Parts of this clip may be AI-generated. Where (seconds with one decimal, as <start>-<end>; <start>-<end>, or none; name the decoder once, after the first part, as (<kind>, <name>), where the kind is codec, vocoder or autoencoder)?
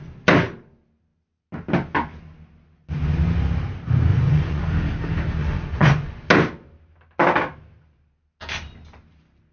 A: 4.1-4.6 (vocoder, Vocos); 5.4-6.3